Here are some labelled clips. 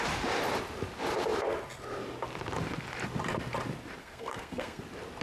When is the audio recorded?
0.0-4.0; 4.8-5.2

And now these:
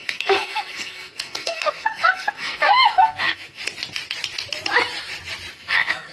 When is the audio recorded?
3.6-5.5

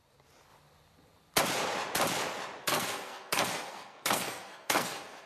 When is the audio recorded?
0.0-2.6

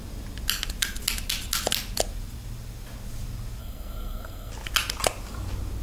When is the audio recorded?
0.0-3.6; 4.5-5.8

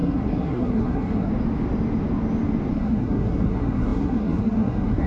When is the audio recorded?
1.3-2.7

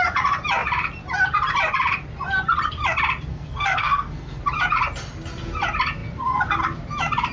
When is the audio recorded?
0.0-3.3; 4.4-7.3

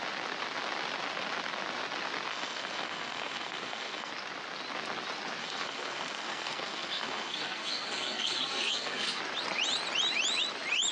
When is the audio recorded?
0.0-2.3; 4.1-5.4; 9.2-10.9

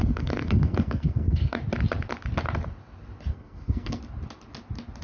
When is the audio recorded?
1.6-3.3; 4.0-5.0